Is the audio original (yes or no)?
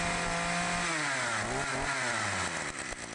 yes